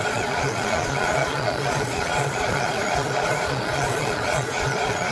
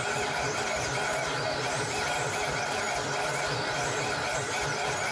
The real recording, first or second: second